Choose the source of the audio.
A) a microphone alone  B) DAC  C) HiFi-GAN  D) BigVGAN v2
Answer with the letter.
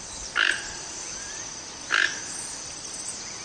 A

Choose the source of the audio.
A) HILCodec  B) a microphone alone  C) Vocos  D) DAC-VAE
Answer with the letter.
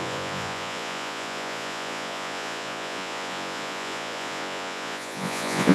C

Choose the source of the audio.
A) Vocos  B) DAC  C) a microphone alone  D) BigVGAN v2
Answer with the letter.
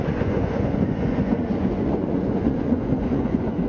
A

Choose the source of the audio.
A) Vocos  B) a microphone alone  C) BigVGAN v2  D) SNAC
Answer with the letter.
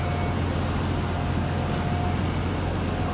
B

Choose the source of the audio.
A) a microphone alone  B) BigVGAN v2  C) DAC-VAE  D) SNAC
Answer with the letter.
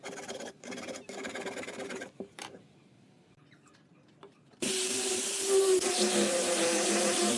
B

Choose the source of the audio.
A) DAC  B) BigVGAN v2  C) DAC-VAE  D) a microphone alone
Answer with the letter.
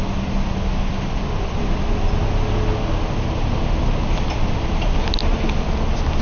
D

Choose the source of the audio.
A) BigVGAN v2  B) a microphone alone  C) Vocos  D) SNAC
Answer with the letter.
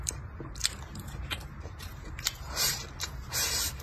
A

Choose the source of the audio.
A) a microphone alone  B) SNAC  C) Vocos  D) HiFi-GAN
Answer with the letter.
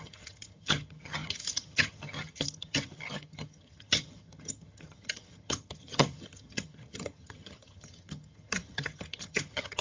D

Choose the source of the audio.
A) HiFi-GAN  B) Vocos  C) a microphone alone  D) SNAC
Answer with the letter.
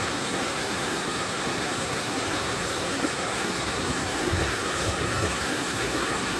D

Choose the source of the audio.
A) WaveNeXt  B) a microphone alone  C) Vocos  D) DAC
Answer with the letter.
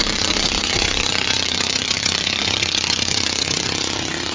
A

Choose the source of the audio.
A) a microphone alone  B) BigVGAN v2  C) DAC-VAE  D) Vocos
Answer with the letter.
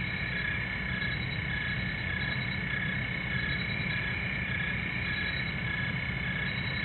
A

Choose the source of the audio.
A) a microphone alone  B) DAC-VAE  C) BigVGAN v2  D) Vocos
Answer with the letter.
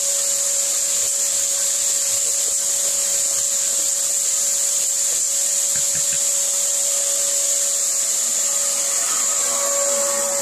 A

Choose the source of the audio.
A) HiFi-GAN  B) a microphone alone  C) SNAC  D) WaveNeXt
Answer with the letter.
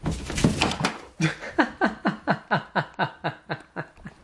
B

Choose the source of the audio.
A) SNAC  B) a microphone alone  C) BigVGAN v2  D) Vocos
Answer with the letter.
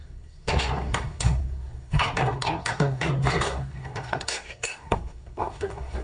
A